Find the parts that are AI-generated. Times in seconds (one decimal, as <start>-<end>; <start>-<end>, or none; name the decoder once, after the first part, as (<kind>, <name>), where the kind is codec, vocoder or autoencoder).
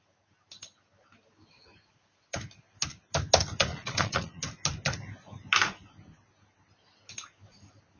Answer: 3.7-4.4 (vocoder, Vocos)